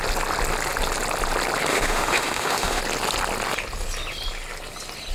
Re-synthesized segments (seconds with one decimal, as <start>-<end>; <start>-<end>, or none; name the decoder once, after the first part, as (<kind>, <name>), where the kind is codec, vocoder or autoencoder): 1.7-2.8 (autoencoder, DAC-VAE)